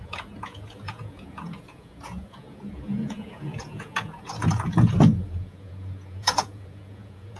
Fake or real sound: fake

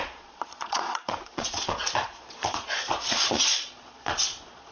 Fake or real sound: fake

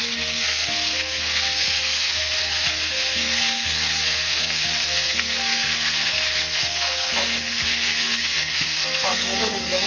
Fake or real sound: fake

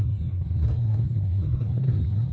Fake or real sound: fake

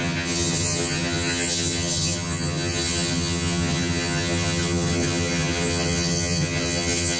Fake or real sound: fake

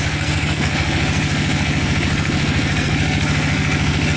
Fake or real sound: fake